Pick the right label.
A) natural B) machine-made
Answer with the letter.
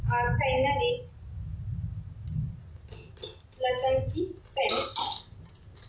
A